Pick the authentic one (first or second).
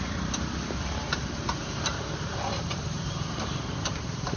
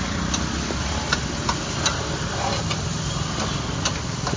second